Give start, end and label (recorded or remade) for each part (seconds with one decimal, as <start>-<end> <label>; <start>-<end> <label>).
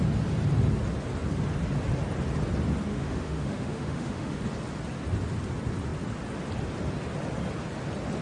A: 0.0-2.9 recorded; 2.9-4.4 remade; 4.4-8.2 recorded